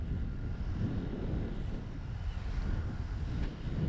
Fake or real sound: real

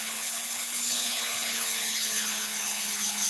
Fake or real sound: fake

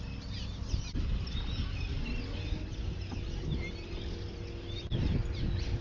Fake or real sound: real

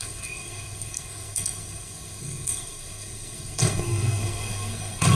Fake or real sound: fake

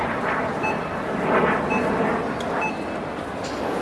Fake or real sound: real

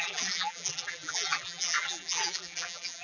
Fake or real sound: fake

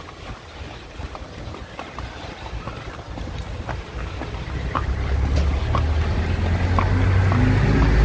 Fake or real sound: real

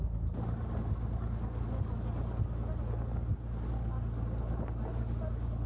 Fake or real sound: real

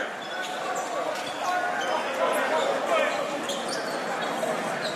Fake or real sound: real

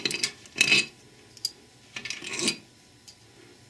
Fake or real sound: real